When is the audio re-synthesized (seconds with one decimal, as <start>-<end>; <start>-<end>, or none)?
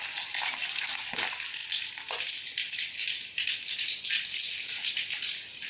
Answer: none